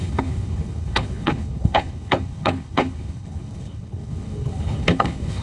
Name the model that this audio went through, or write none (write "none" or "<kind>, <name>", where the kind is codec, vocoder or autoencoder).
codec, HILCodec